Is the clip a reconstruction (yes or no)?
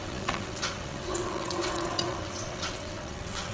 yes